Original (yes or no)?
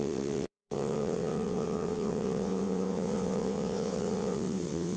no